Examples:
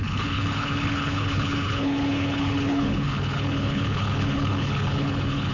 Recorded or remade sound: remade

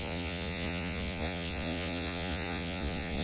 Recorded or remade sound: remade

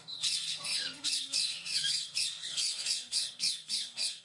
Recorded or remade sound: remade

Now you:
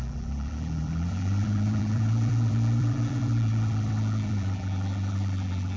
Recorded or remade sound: remade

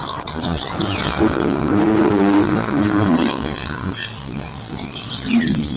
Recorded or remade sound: remade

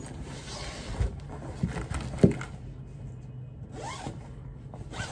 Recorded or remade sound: recorded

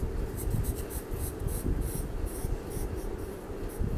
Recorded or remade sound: recorded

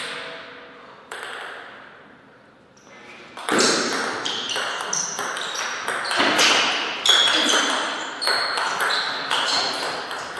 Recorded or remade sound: recorded